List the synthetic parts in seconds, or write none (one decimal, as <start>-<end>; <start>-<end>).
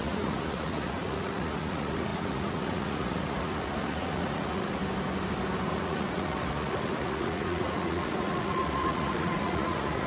0.0-4.8; 5.7-10.1